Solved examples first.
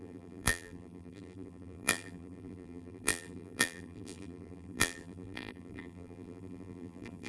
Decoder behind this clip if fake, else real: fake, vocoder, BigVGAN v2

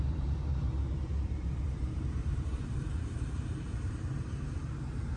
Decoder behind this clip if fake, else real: fake, vocoder, BigVGAN v2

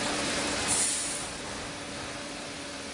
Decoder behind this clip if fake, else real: fake, vocoder, BigVGAN v2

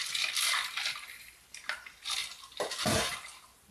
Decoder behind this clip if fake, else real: real